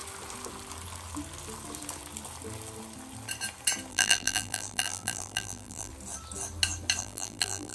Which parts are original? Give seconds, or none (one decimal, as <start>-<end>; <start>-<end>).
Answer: 0.0-3.9; 5.9-7.0